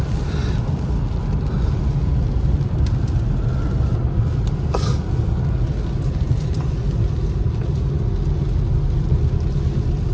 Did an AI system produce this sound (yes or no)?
no